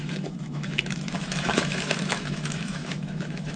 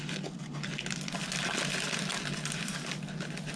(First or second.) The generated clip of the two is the first